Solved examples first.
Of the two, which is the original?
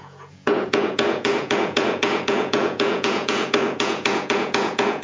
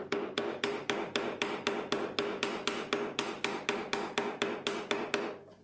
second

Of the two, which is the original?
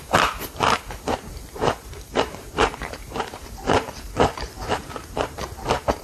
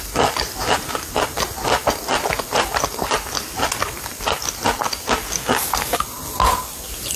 second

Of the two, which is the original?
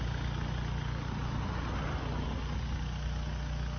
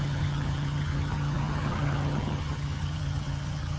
first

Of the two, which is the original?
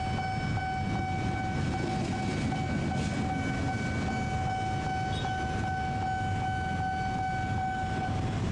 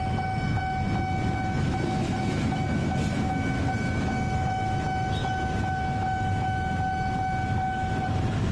first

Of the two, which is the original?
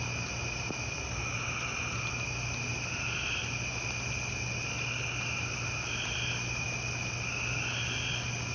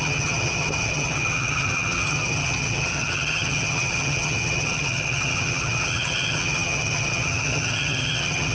first